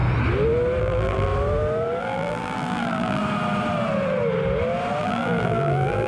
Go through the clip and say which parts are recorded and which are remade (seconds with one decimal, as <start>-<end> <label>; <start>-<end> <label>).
0.0-0.8 recorded; 0.8-1.3 remade; 1.3-2.0 recorded; 2.0-3.2 remade; 3.2-5.0 recorded; 5.0-6.1 remade